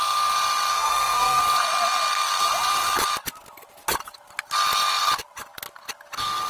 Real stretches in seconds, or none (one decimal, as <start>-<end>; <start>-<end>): 0.0-0.7; 1.4-6.5